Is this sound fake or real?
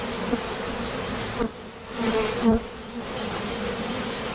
real